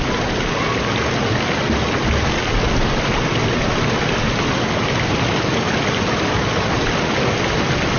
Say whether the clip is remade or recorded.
recorded